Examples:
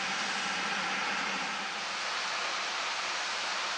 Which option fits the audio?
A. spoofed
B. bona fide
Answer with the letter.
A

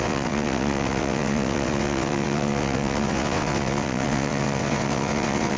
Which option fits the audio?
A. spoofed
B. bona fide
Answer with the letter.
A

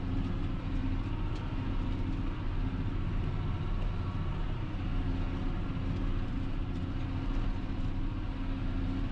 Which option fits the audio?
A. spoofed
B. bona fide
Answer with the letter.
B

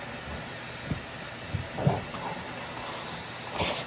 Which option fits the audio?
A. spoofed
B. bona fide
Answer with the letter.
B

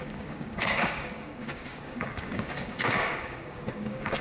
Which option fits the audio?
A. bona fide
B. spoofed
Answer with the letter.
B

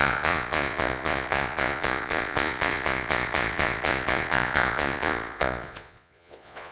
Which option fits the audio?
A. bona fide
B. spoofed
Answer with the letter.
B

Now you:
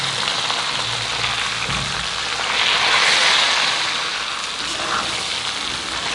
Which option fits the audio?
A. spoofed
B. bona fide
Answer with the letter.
B